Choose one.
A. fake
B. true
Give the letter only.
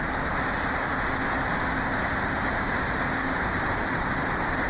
B